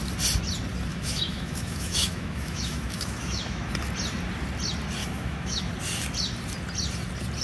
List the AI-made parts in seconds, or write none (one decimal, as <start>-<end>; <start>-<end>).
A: 0.9-3.7; 5.0-5.6